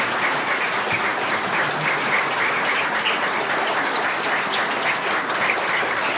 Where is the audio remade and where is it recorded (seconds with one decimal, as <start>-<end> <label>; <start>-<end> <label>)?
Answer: 0.0-6.2 recorded